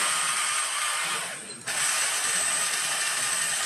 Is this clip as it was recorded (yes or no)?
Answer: yes